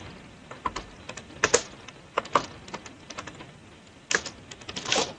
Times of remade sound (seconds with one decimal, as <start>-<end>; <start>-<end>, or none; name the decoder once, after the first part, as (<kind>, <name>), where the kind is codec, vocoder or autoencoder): none